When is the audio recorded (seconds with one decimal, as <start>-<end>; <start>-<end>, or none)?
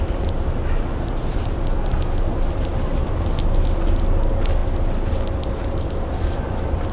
0.0-6.9